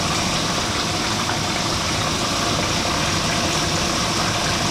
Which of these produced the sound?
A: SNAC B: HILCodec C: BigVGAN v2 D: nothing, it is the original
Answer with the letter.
D